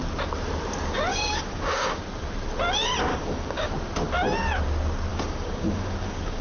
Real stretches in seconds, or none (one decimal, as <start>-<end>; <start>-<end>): 0.0-1.1; 2.0-3.1; 3.7-5.1